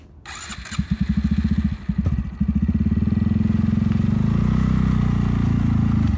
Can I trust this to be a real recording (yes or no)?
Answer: yes